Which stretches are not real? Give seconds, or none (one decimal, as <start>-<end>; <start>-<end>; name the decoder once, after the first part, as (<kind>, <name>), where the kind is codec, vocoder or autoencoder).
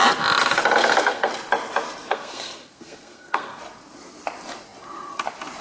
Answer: 0.8-1.3 (codec, SNAC); 2.1-3.6